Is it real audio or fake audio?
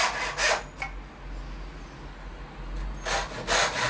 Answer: real